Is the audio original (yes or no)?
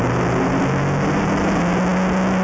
yes